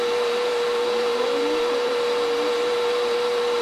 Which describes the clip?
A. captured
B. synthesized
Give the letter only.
B